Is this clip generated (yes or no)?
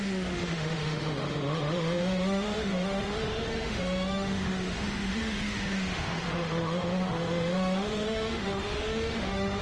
yes